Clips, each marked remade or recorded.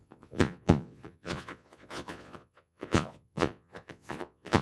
remade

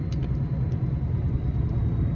recorded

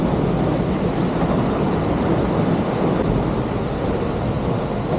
recorded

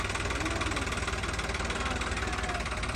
recorded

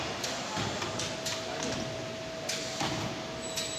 recorded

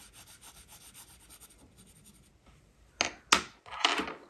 recorded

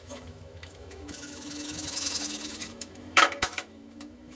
remade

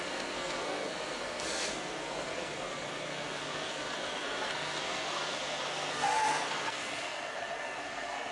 remade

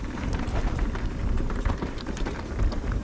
remade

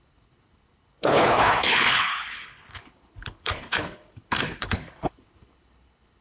remade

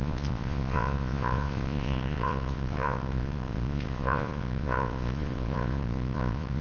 remade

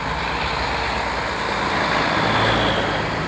recorded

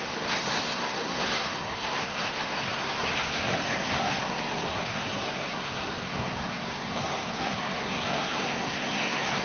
remade